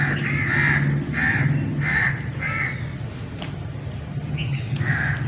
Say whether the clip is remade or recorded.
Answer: recorded